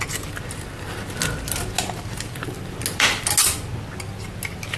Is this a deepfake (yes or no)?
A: no